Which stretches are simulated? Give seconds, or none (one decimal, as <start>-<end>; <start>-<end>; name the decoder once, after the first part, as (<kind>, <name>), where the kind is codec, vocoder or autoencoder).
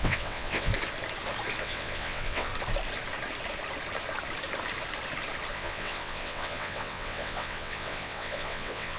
0.0-0.7 (vocoder, WaveNeXt); 1.6-2.5; 5.5-9.0